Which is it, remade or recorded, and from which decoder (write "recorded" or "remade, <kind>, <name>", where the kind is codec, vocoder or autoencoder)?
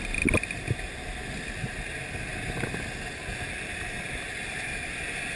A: recorded